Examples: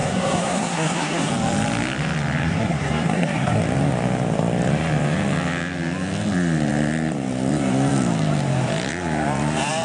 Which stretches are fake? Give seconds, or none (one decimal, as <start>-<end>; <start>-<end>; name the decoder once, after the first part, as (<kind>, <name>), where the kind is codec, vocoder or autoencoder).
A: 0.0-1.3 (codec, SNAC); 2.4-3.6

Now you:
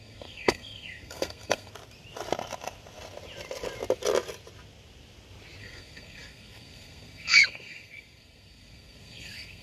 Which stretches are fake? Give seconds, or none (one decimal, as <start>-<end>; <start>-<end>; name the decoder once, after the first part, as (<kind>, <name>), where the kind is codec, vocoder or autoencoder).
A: 0.0-1.7 (codec, SNAC); 5.6-9.6

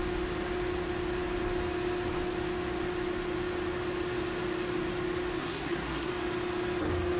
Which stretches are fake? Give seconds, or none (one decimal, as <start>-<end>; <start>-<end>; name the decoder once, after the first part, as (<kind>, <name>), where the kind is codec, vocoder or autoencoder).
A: 5.4-6.1 (codec, SNAC)

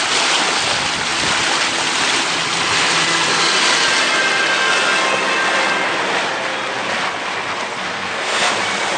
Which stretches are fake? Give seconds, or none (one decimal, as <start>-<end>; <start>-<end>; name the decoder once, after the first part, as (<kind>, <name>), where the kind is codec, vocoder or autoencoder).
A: 7.7-8.5 (codec, SNAC)

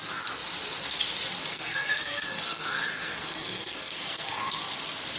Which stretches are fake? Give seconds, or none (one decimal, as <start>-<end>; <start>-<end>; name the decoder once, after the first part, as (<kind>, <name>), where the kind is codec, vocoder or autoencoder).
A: 1.5-4.6 (codec, SNAC)

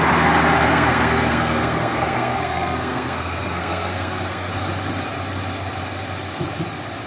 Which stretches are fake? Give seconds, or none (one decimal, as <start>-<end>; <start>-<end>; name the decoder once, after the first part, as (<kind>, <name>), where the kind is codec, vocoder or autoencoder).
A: 0.7-4.5 (codec, SNAC)

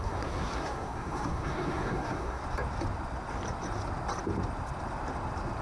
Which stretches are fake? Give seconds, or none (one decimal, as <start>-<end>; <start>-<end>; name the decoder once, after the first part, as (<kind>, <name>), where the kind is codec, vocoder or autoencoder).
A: 0.0-2.4 (codec, SNAC)